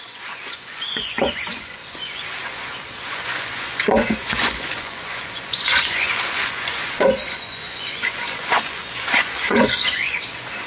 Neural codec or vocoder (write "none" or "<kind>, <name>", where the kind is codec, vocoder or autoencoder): vocoder, Vocos